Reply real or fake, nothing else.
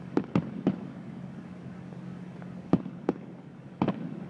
fake